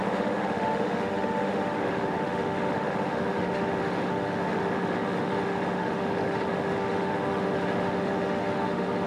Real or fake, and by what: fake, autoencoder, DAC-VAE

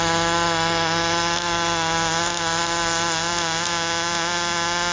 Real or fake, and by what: real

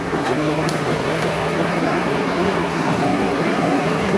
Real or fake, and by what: fake, codec, SNAC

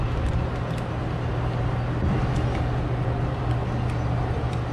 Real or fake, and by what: real